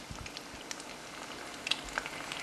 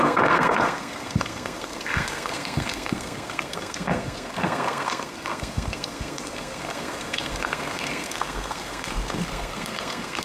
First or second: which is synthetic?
second